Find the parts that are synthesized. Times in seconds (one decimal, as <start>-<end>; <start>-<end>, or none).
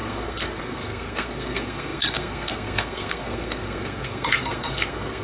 0.0-5.2